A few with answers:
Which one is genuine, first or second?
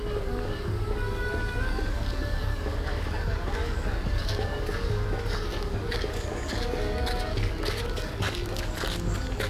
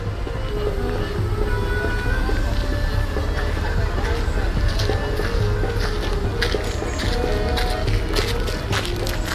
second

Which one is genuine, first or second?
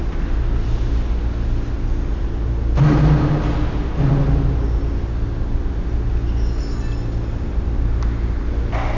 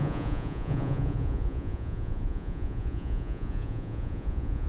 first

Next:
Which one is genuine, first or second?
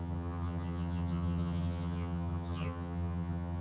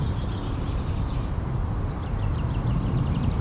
second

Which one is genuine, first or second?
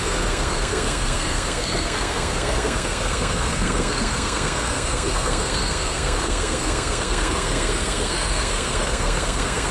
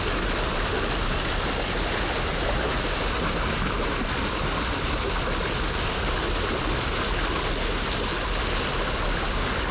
second